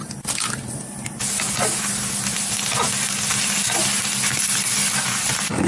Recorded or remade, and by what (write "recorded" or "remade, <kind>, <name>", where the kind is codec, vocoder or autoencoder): recorded